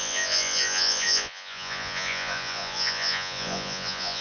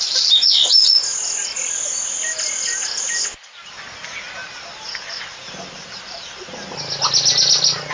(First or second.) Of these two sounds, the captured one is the second